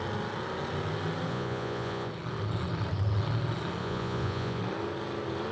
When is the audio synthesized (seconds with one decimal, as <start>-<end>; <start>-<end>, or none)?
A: 1.3-2.1; 3.8-4.6